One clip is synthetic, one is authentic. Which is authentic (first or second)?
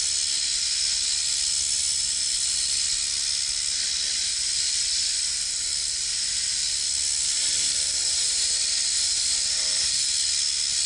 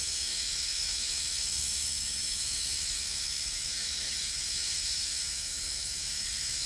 first